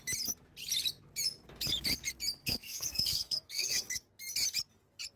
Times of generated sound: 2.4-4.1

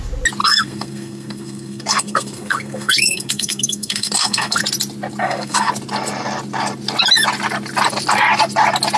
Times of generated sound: 0.4-4.6; 5.2-5.7